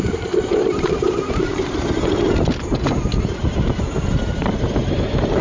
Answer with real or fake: fake